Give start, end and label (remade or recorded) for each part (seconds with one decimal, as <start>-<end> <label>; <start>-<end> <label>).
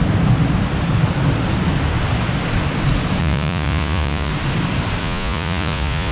0.0-3.2 recorded; 3.2-4.3 remade; 4.3-5.0 recorded; 5.0-6.1 remade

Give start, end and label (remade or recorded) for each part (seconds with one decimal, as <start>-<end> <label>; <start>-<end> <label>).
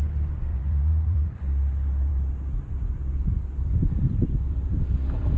0.0-0.5 recorded; 0.5-1.4 remade; 1.4-5.4 recorded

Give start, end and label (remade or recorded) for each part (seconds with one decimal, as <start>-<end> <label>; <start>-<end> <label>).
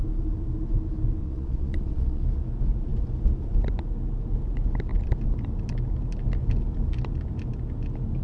0.0-1.2 recorded; 1.2-2.2 remade; 2.2-8.2 recorded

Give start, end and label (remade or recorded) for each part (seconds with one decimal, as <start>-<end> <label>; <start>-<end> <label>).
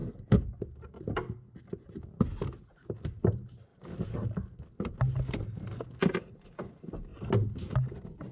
0.0-8.3 recorded